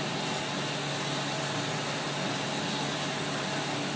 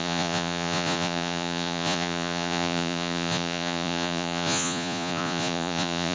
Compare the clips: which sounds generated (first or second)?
second